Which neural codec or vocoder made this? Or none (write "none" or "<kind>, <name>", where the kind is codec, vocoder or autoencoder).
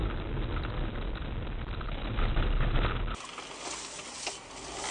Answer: none